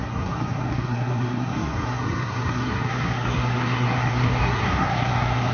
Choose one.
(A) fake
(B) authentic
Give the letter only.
A